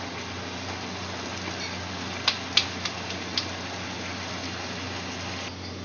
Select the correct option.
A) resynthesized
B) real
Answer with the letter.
B